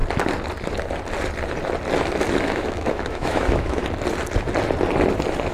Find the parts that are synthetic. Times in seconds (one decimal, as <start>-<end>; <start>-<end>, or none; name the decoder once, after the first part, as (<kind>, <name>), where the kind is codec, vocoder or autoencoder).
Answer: 2.4-3.8 (autoencoder, DAC-VAE)